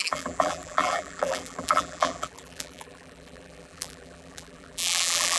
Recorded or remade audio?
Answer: remade